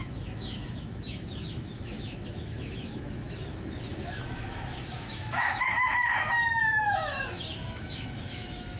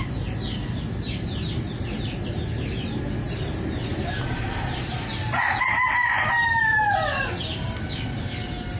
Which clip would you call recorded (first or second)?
second